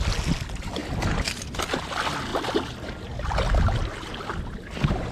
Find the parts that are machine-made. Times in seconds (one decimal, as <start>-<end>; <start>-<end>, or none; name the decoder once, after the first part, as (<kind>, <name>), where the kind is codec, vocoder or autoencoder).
none